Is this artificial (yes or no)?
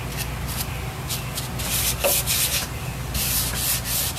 no